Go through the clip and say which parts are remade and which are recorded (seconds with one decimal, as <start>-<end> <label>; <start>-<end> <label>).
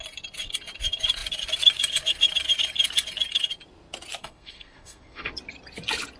0.0-4.2 recorded; 4.2-5.3 remade; 5.3-6.2 recorded